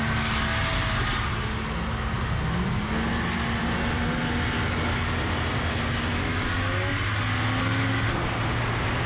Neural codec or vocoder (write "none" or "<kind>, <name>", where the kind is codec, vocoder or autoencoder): none